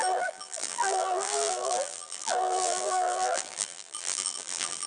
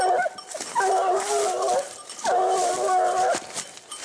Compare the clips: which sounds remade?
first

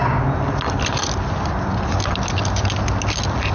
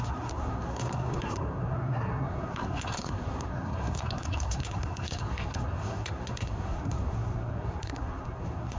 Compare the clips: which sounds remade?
second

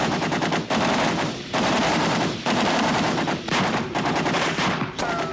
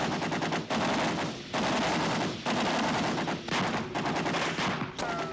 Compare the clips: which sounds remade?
first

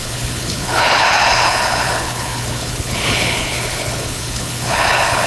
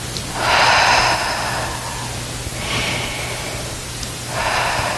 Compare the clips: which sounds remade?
first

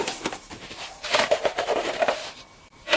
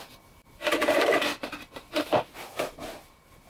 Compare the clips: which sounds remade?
first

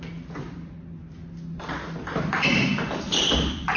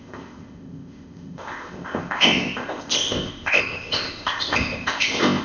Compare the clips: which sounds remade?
second